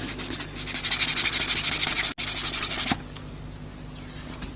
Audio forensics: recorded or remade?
recorded